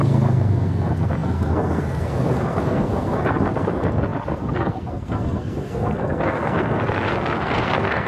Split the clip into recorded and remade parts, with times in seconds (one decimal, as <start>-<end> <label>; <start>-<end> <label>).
0.0-8.1 remade